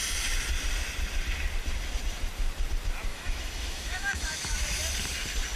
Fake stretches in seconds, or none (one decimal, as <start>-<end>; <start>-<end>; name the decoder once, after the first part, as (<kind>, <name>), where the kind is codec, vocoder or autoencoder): 3.1-4.8 (autoencoder, DAC-VAE)